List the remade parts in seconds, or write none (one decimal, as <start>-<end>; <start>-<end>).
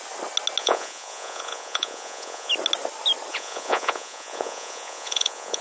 0.6-2.5; 3.3-5.6